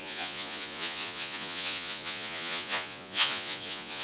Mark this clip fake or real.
fake